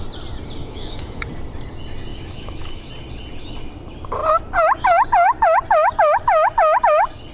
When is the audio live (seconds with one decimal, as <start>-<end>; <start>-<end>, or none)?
0.0-0.6; 1.2-2.1; 2.9-7.3